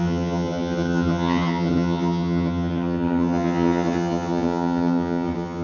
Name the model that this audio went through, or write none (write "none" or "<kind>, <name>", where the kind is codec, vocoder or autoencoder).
vocoder, HiFi-GAN